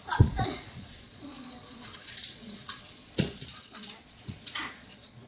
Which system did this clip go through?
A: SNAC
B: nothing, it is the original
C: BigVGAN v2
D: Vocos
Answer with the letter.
D